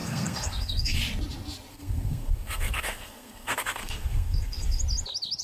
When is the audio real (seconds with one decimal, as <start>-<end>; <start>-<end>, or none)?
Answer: 1.0-1.7; 4.8-5.4